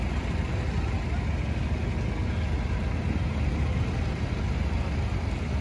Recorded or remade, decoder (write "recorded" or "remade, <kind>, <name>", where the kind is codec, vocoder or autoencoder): recorded